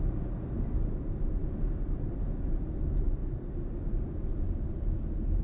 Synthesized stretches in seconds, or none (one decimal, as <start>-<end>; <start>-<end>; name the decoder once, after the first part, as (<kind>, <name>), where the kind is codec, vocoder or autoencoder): none